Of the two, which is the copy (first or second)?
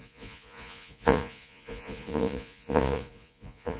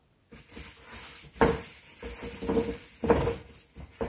first